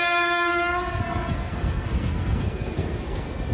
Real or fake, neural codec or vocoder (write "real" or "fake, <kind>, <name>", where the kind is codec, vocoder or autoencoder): fake, codec, SNAC